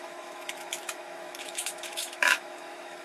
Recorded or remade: remade